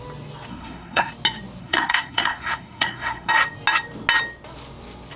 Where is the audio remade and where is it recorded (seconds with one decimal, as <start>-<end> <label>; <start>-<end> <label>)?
0.0-0.5 recorded; 0.5-1.1 remade; 1.1-1.6 recorded; 1.6-3.3 remade; 3.3-5.2 recorded